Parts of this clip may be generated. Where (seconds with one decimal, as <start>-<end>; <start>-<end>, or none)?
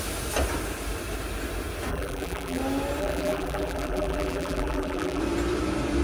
1.9-2.6; 3.0-5.2